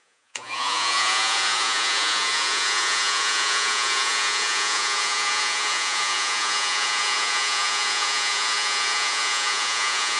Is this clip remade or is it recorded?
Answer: remade